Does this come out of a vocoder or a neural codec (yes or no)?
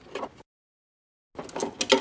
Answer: no